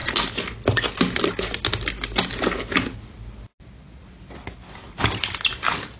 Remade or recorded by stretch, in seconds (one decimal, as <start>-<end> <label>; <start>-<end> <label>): 0.0-6.0 recorded